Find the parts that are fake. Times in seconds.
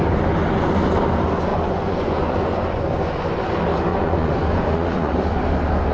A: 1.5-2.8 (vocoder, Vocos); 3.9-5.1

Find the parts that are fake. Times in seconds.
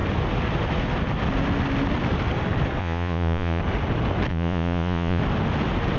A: 2.8-3.6 (vocoder, Vocos); 4.3-5.2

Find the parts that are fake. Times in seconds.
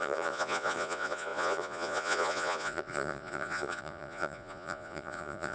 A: 0.0-5.5 (vocoder, Vocos)